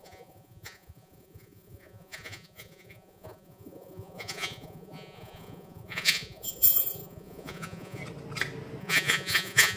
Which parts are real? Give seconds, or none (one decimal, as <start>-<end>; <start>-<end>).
8.0-8.8